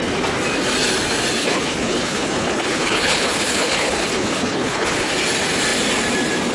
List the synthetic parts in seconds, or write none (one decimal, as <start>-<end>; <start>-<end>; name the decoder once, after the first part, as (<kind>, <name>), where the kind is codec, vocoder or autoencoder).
1.4-5.1 (codec, HILCodec)